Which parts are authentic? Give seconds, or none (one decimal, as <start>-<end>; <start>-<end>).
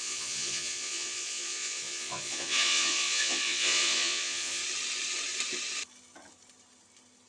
4.6-7.3